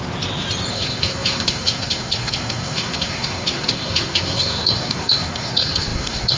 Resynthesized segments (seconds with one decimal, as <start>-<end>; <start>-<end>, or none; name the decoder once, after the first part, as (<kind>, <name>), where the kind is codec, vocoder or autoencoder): 0.7-6.4 (codec, SNAC)